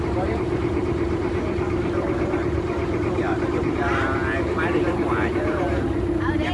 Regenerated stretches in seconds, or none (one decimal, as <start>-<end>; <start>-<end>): 0.0-6.5